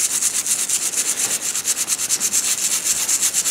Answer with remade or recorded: recorded